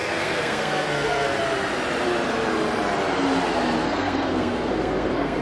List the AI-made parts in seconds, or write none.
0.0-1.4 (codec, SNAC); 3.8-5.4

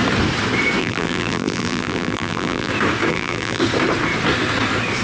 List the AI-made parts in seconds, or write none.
0.8-2.7 (vocoder, BigVGAN v2); 3.1-3.6

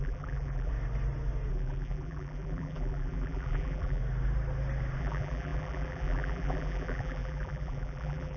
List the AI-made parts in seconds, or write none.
0.0-0.7 (vocoder, BigVGAN v2); 1.5-4.0; 5.0-8.4

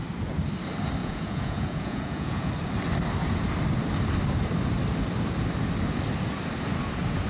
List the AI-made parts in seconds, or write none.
1.0-2.5 (vocoder, Vocos)

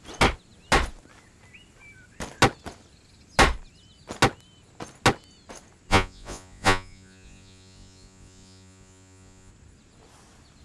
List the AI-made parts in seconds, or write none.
5.9-9.5 (vocoder, Vocos)

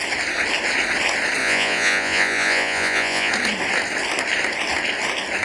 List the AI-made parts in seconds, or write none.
1.4-3.3 (vocoder, Vocos)

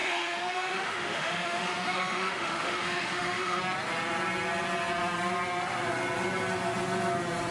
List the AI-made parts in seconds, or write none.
0.0-3.6 (autoencoder, DAC-VAE)

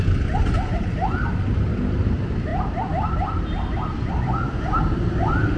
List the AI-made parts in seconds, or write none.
none